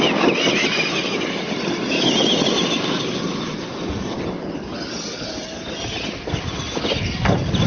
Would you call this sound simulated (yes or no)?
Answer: no